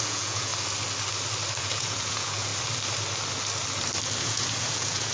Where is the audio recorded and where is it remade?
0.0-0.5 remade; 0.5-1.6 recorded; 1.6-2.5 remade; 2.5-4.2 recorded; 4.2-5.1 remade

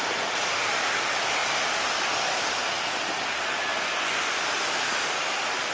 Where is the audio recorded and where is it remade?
0.0-3.7 recorded; 3.7-4.4 remade; 4.4-5.7 recorded

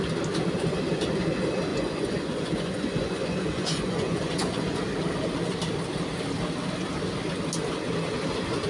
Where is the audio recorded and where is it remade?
0.0-1.7 recorded; 1.7-4.8 remade; 4.8-8.7 recorded

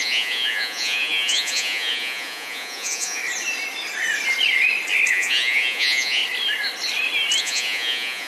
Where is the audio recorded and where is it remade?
0.0-3.2 remade; 3.2-5.1 recorded; 5.1-6.2 remade; 6.2-7.4 recorded; 7.4-8.3 remade

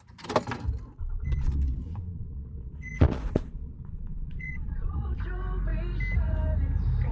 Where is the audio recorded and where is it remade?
0.0-0.9 recorded; 0.9-5.2 remade; 5.2-7.1 recorded

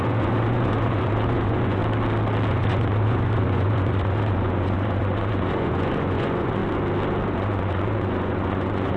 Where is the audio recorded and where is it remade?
0.0-1.8 remade; 1.8-2.5 recorded; 2.5-6.6 remade; 6.6-7.3 recorded; 7.3-9.0 remade

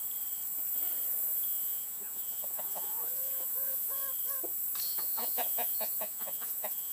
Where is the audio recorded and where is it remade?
0.0-1.2 recorded; 1.2-4.0 remade; 4.0-4.8 recorded; 4.8-6.9 remade

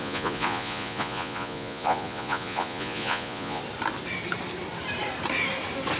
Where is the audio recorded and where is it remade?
0.0-3.6 remade; 3.6-6.0 recorded